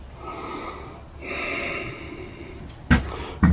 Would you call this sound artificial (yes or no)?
no